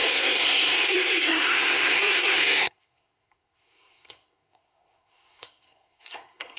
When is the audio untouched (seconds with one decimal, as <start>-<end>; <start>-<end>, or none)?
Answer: none